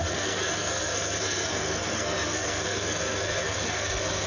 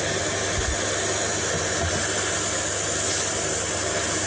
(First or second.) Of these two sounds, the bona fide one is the second